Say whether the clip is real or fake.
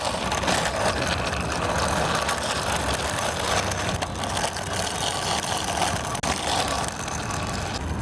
real